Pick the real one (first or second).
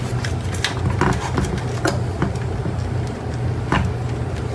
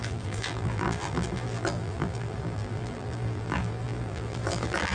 first